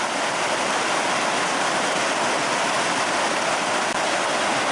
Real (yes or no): yes